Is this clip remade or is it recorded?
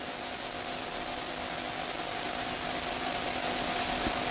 recorded